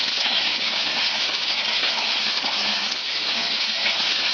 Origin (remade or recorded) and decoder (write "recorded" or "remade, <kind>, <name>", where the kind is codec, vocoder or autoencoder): remade, codec, SNAC